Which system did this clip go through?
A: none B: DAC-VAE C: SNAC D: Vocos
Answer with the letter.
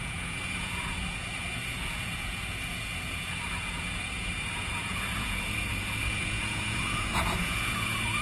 D